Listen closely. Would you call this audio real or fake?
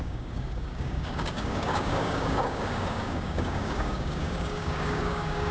fake